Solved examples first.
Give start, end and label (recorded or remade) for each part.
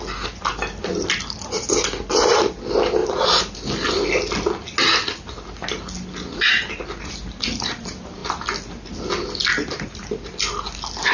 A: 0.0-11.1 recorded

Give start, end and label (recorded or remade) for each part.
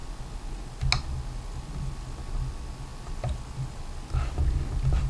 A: 0.0-5.1 recorded